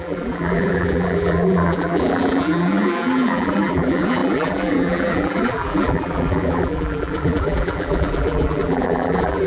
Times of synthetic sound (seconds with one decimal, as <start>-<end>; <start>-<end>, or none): 0.0-9.5